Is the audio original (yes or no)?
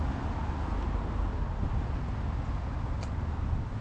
yes